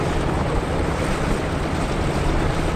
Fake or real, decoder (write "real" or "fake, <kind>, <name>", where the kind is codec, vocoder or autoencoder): real